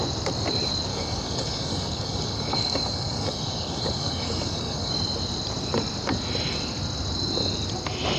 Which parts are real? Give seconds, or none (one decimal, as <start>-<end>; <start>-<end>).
0.0-0.9; 4.9-8.2